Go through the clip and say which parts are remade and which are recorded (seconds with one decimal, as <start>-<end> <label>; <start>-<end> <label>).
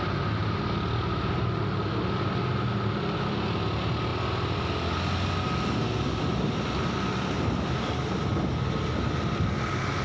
0.0-10.0 recorded